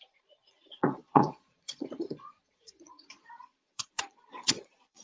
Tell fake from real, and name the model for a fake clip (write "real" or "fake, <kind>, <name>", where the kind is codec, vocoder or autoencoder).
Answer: fake, vocoder, Vocos